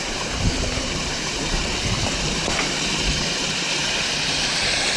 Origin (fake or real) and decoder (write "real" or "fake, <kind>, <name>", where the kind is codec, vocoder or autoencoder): fake, vocoder, BigVGAN v2